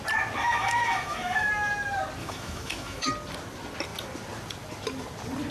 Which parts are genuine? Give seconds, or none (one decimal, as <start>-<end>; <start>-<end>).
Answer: 0.0-0.4; 1.5-2.2; 3.1-5.5